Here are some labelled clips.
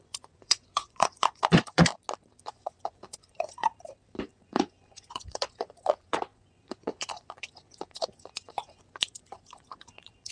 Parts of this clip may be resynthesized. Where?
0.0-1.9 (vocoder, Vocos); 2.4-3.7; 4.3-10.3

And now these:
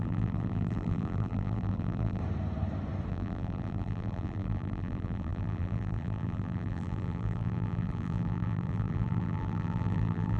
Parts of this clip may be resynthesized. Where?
0.0-2.2 (vocoder, BigVGAN v2); 3.1-10.4

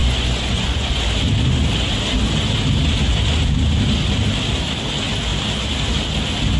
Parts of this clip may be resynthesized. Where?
0.0-1.0 (vocoder, Vocos)

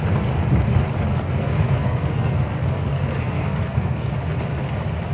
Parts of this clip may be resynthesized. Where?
1.1-4.1 (codec, SNAC)

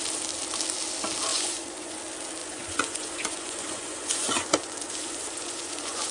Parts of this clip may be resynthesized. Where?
1.3-2.0 (vocoder, Vocos); 2.4-6.1

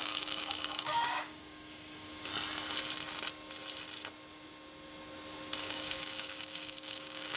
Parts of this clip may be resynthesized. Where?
0.0-2.3 (codec, DAC); 5.6-7.4